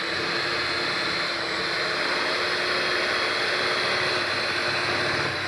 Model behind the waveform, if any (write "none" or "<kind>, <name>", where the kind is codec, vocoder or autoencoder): none